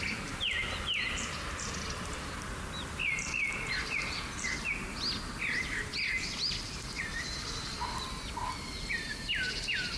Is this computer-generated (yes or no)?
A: yes